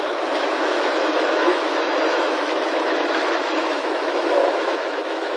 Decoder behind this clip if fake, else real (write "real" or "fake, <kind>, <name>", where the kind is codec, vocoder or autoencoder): fake, autoencoder, DAC-VAE